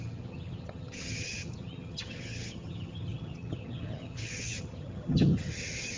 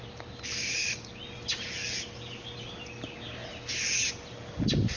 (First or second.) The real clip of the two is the second